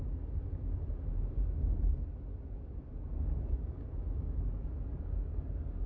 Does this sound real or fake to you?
real